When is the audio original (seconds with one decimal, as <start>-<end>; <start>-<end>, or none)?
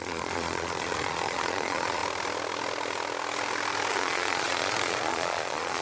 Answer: 2.0-3.9